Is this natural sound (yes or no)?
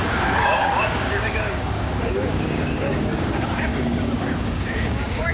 no